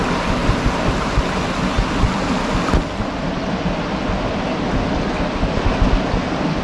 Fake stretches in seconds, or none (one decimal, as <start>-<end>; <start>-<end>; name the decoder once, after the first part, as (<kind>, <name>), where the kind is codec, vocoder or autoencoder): 0.4-1.2 (vocoder, BigVGAN v2)

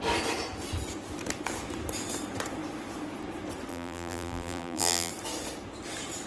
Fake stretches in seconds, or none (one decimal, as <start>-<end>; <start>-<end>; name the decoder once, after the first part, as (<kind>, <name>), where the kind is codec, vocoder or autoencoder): 3.7-5.1 (vocoder, BigVGAN v2)

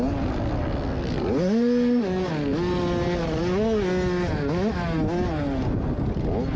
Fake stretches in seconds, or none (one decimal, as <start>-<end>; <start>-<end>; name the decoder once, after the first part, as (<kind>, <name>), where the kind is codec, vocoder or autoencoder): none

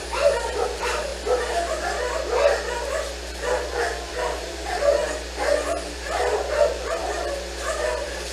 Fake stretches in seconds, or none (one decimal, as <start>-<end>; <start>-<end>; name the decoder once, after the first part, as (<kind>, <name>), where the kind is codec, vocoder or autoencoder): 0.0-1.1 (vocoder, BigVGAN v2); 3.3-5.0; 5.7-7.0; 7.9-8.3

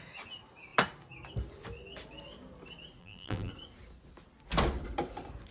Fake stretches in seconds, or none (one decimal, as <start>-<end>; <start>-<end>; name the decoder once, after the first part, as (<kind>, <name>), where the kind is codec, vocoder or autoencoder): 3.0-3.5 (vocoder, BigVGAN v2)

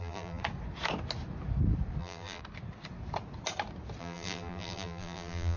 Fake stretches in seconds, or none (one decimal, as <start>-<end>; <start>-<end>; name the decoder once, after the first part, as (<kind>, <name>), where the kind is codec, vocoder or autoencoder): 0.0-0.4 (vocoder, BigVGAN v2); 2.0-2.4; 4.0-5.6

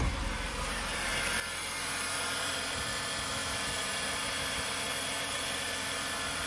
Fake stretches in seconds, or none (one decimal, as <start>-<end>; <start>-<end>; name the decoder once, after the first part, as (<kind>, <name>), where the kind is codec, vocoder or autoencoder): 0.0-1.1 (vocoder, BigVGAN v2); 2.4-3.4; 5.2-6.5